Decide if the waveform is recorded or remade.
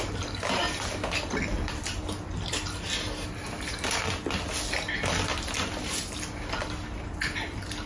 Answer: recorded